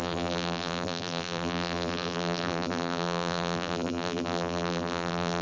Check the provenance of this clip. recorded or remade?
remade